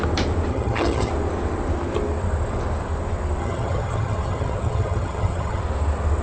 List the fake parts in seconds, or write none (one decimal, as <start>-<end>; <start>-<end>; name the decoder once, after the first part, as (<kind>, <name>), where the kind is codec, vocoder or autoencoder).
0.5-1.1 (vocoder, HiFi-GAN); 3.4-5.6